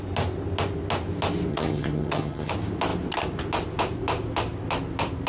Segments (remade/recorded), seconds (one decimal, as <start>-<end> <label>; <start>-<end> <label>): 0.0-1.5 recorded; 1.5-2.5 remade; 2.5-5.3 recorded